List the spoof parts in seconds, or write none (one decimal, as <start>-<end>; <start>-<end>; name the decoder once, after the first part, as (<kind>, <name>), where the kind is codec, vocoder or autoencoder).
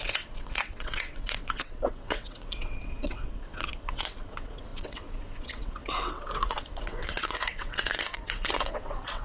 0.0-9.2 (vocoder, WaveNeXt)